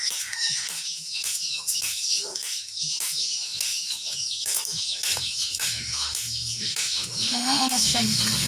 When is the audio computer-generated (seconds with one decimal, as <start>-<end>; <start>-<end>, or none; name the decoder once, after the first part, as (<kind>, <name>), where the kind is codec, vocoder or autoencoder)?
0.0-8.5 (autoencoder, DAC-VAE)